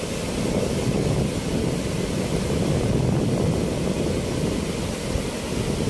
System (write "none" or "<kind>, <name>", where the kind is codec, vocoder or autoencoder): none